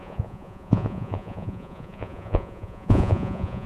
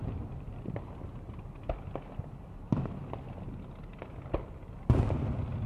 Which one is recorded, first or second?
second